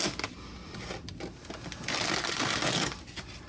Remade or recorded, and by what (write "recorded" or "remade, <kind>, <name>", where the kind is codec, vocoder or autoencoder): recorded